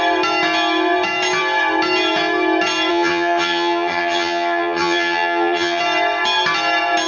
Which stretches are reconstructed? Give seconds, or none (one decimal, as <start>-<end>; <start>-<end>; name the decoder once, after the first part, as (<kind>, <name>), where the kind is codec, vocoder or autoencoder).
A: 2.9-5.8 (vocoder, HiFi-GAN)

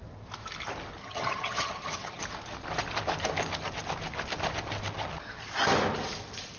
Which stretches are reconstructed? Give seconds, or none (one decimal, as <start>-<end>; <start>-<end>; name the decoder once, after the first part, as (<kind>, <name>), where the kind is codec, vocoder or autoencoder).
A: 1.0-2.2 (vocoder, HiFi-GAN)

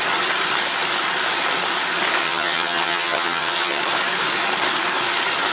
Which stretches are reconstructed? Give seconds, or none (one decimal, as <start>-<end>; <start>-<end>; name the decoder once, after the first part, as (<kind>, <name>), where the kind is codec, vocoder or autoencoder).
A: 2.2-3.8 (vocoder, HiFi-GAN)